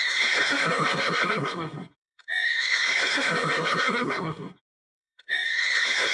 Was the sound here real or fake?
fake